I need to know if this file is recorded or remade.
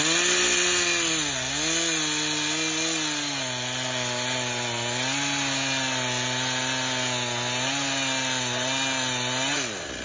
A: recorded